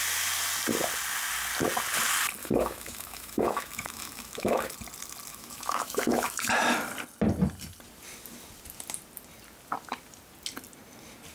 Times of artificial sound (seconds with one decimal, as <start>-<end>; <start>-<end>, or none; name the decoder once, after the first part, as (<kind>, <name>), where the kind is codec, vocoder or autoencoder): 2.4-4.7 (autoencoder, DAC-VAE); 5.3-6.5